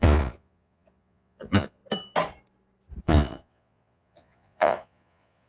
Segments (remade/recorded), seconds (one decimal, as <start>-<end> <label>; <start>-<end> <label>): 0.0-1.8 remade; 1.8-3.0 recorded; 3.0-5.5 remade

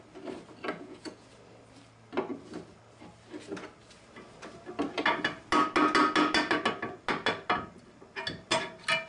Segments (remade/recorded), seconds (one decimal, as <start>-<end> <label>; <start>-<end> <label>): 0.0-0.7 recorded; 0.7-1.3 remade; 1.3-9.1 recorded